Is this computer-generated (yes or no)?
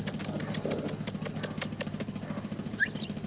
no